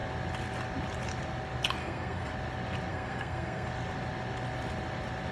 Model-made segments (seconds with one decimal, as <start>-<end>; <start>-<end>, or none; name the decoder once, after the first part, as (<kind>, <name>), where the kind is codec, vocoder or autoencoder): 1.8-2.3 (codec, SNAC); 2.9-3.7